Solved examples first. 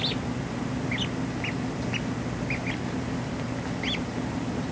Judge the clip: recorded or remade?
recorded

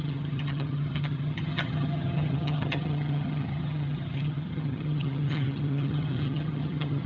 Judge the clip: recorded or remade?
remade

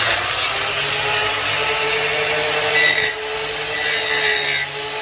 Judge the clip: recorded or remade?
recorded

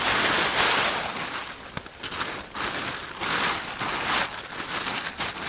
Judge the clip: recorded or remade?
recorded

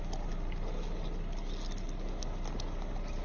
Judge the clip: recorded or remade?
recorded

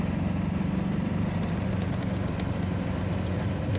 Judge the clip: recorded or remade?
recorded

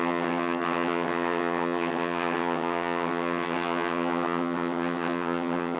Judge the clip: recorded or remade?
remade